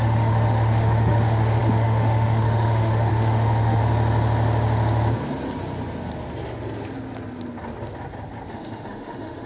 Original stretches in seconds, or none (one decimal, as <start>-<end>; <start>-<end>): 3.8-8.5